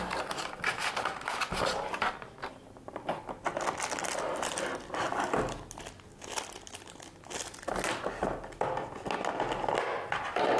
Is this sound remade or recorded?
recorded